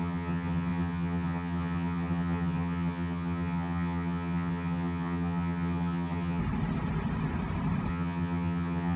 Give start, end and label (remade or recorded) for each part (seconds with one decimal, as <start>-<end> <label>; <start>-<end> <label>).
0.0-6.4 remade; 6.4-7.9 recorded; 7.9-9.0 remade